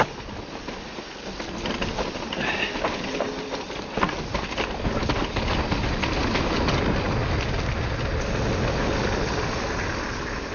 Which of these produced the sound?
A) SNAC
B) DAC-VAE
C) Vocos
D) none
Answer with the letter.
D